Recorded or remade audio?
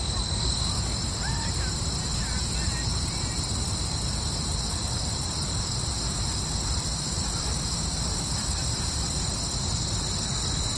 recorded